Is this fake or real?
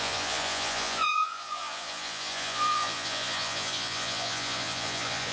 fake